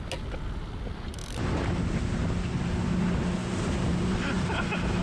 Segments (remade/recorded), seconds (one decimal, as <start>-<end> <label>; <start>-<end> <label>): 0.0-3.4 recorded; 3.4-5.0 remade